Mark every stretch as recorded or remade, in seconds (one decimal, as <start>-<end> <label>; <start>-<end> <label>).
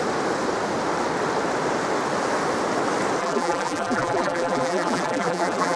0.0-3.2 recorded; 3.2-5.8 remade